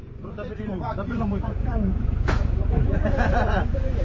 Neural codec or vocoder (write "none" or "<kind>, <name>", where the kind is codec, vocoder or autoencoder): vocoder, Vocos